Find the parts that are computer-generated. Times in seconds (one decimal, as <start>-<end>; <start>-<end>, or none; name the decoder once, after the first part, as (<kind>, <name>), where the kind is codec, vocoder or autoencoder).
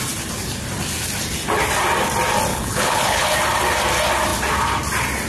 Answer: 2.5-3.2 (codec, HILCodec)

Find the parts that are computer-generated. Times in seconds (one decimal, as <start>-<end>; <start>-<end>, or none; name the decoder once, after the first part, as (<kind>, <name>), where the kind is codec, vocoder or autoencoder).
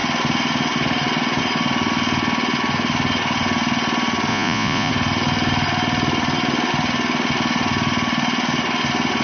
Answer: 4.3-4.9 (vocoder, Vocos)